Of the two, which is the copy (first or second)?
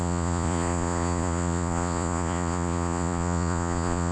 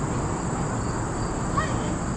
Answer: first